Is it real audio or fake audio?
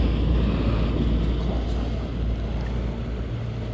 real